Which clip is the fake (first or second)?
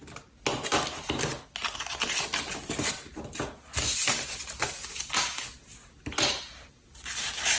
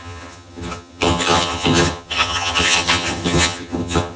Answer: second